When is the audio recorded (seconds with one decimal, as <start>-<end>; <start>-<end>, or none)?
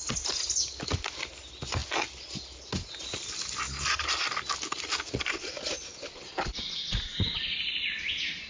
0.0-8.5